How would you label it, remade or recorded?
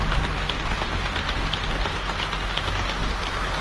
recorded